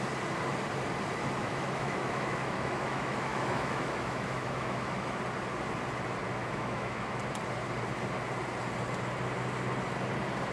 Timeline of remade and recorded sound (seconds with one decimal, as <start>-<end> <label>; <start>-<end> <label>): 0.0-1.4 recorded; 1.4-5.2 remade; 5.2-6.4 recorded; 6.4-7.2 remade; 7.2-10.5 recorded